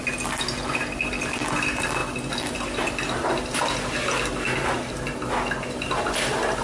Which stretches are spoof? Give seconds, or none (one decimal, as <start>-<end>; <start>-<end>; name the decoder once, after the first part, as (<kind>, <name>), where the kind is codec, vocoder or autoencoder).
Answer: none